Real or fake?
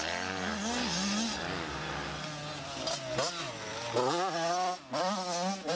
real